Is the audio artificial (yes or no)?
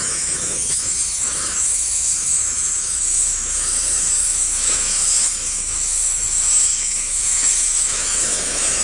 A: yes